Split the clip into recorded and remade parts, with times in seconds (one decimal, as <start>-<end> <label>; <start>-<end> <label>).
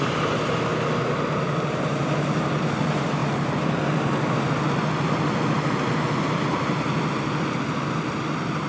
0.0-8.7 recorded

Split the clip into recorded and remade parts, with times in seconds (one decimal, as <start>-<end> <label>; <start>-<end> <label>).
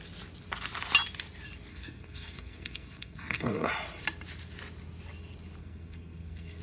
0.0-1.7 recorded; 1.7-3.7 remade; 3.7-5.6 recorded; 5.6-6.6 remade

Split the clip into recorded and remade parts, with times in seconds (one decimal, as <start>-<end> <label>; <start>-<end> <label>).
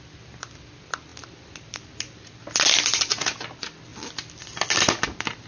0.0-5.5 recorded